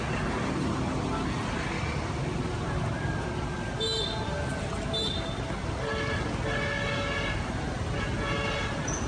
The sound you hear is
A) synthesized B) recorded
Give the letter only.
B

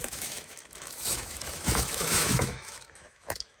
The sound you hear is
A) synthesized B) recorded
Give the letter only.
A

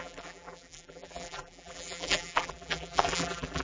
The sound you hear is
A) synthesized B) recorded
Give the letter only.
A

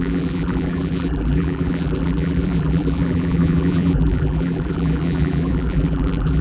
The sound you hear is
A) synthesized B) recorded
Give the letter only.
A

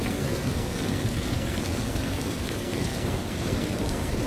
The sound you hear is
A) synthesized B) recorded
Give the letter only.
A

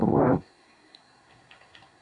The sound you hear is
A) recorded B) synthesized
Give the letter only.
B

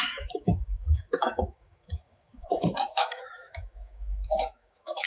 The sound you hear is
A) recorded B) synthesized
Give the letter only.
B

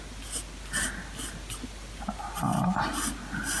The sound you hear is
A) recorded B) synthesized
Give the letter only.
A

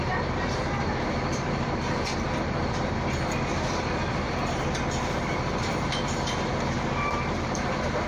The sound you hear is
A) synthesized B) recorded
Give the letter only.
A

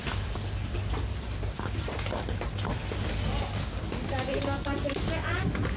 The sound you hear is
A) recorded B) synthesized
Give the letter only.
A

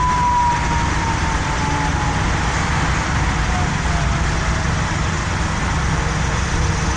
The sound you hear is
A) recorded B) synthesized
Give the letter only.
A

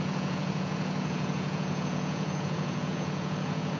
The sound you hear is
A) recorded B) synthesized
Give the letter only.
B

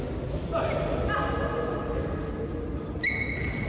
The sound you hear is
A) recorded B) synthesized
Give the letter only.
A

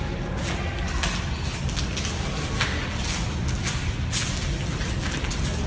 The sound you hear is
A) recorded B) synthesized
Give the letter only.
A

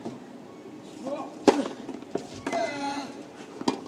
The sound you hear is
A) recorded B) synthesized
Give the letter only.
A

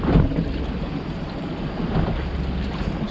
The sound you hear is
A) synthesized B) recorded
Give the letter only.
B